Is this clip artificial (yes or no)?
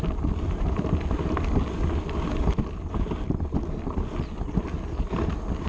no